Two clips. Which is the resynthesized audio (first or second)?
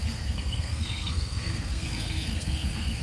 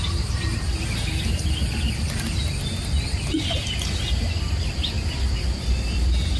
first